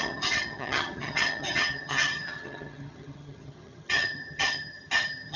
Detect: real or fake fake